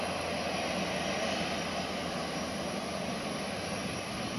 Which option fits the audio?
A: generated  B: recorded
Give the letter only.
B